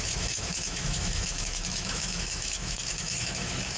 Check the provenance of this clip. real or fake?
fake